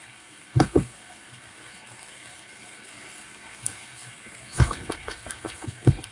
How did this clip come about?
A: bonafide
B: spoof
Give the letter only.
B